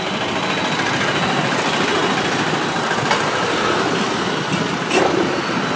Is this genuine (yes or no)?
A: yes